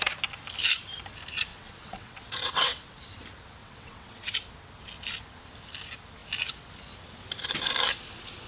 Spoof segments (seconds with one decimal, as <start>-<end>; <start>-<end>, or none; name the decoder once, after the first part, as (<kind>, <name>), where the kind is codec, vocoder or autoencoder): 1.5-3.0 (vocoder, WaveNeXt); 3.6-4.3

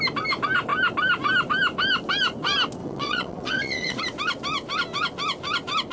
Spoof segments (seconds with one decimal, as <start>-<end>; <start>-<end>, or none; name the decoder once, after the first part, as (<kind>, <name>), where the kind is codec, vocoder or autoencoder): 2.8-4.0 (vocoder, WaveNeXt)

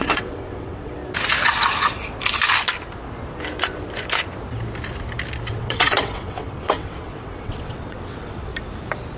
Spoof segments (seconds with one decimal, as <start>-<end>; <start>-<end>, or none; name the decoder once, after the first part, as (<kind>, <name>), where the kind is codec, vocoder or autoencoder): 0.0-1.0 (vocoder, WaveNeXt); 5.5-8.5

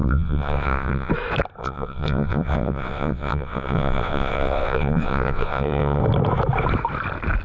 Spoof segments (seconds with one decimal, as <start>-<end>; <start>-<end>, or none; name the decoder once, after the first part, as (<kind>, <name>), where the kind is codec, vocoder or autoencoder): 0.0-1.1 (vocoder, WaveNeXt); 1.6-6.0

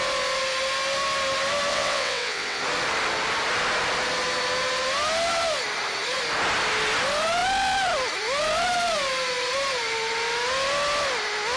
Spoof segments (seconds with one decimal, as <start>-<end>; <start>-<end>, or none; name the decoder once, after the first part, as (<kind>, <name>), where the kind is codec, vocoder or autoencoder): 1.7-2.6 (vocoder, WaveNeXt)

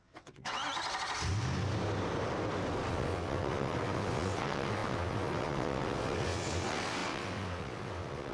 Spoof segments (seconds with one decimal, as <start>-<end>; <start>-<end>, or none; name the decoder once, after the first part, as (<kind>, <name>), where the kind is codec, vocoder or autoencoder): 0.0-0.6 (vocoder, WaveNeXt); 2.9-8.3

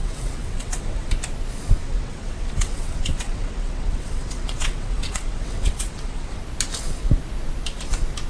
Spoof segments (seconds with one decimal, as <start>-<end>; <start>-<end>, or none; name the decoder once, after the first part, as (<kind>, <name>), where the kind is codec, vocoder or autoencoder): 0.0-1.1 (vocoder, WaveNeXt); 1.8-6.4

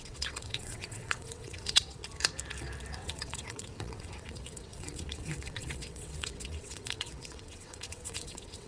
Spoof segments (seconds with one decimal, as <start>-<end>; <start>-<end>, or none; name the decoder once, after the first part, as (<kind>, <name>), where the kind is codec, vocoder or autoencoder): 0.0-2.0 (vocoder, WaveNeXt); 2.9-8.7